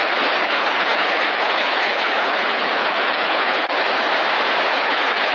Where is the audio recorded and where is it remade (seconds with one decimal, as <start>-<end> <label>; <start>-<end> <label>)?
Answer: 0.0-4.1 remade; 4.1-4.7 recorded; 4.7-5.3 remade